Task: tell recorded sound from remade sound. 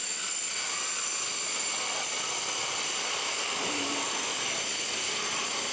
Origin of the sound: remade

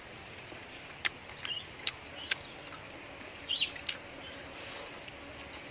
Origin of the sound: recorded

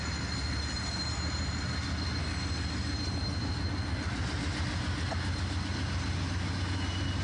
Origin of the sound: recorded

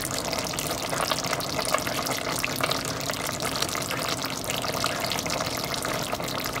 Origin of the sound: recorded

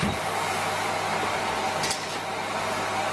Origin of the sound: recorded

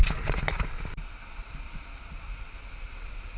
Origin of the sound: recorded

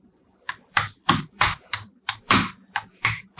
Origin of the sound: remade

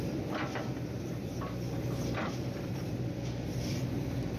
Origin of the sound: remade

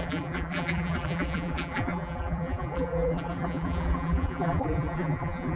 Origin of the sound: remade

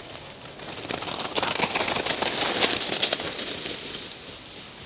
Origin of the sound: recorded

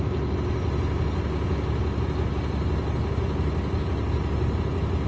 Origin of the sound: recorded